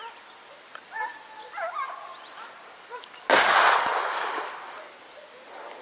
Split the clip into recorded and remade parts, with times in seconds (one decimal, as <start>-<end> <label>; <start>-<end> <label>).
0.0-5.8 recorded